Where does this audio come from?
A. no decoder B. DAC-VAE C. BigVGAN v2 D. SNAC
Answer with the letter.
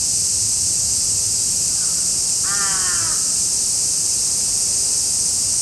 A